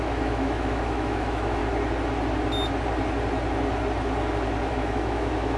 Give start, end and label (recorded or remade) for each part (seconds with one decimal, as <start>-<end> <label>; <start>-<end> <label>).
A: 0.0-1.6 remade; 1.6-4.7 recorded; 4.7-5.6 remade